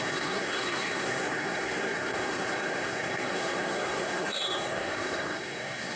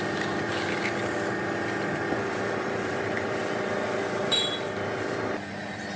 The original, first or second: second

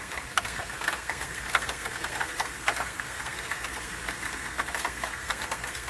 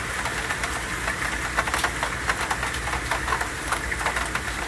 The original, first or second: second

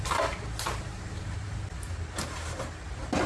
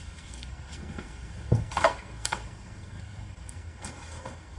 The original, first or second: first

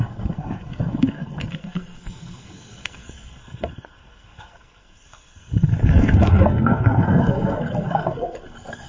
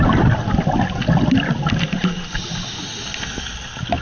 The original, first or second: second